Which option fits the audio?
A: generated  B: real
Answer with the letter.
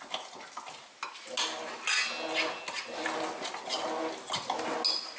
B